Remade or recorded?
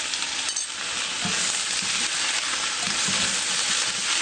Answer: recorded